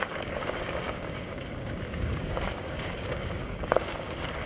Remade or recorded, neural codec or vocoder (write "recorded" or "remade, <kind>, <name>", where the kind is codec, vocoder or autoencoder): remade, codec, DAC